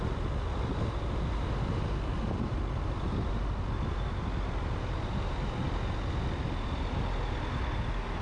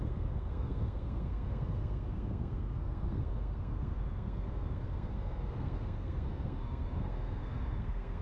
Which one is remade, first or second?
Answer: second